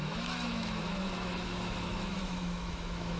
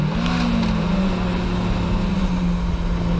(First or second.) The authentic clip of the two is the second